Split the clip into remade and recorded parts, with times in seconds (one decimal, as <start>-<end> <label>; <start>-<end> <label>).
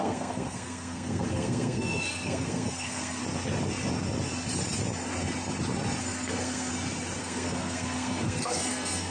0.0-3.2 remade; 3.2-6.0 recorded; 6.0-6.7 remade; 6.7-7.2 recorded; 7.2-9.1 remade